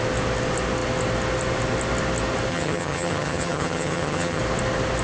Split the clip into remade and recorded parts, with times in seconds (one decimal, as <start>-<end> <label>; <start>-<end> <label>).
0.0-2.5 recorded; 2.5-4.4 remade; 4.4-5.0 recorded